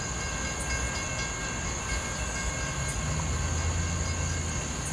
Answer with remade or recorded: recorded